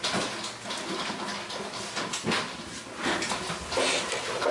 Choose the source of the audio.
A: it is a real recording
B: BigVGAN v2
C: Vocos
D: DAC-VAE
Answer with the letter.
A